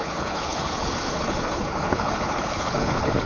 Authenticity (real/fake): fake